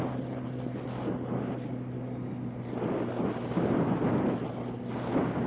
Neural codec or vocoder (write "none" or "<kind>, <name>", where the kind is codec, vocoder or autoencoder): none